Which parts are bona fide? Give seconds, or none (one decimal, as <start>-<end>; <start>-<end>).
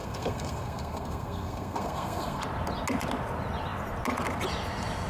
2.4-5.1